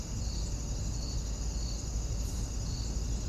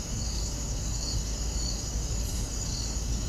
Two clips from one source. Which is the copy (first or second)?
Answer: second